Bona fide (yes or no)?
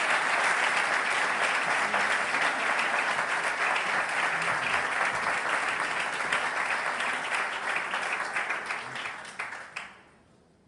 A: yes